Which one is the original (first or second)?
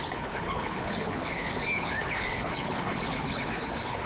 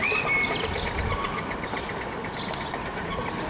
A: second